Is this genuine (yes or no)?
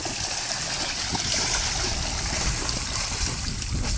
yes